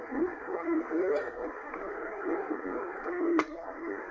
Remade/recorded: remade